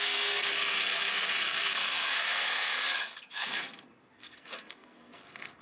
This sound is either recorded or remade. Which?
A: remade